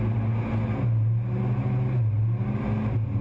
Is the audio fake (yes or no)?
no